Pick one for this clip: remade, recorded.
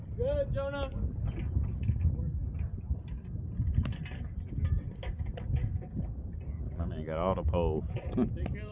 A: recorded